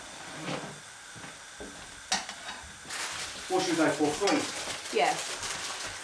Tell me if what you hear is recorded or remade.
recorded